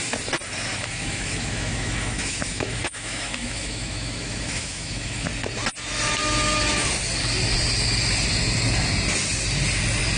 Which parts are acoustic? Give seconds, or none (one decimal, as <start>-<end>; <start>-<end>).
0.0-0.7; 5.3-10.2